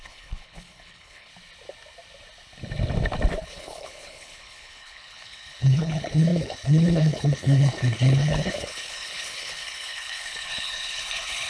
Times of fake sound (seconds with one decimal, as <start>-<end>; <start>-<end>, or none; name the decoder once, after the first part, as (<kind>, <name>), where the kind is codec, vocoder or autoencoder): 0.0-1.3 (codec, HILCodec); 3.4-11.5